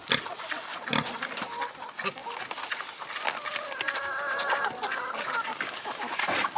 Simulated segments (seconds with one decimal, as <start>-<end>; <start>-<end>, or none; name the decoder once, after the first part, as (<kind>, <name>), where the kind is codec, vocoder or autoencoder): none

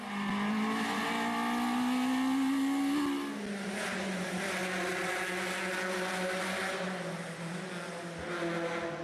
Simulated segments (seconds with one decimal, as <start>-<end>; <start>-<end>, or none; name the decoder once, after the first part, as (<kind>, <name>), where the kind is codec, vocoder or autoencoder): none